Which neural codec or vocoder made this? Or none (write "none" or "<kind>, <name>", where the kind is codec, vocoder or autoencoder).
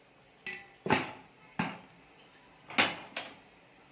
none